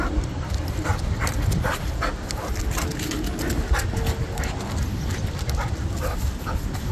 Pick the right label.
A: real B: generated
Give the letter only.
A